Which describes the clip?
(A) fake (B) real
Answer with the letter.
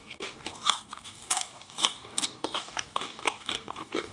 A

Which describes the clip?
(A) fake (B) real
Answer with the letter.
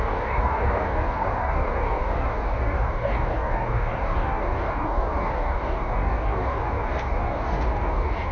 A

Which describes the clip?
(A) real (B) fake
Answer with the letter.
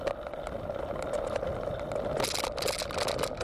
A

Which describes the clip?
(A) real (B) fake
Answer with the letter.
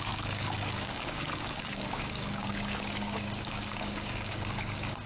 B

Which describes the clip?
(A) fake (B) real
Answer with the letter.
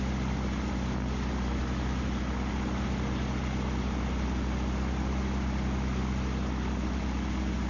B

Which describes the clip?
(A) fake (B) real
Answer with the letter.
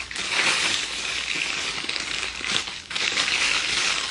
A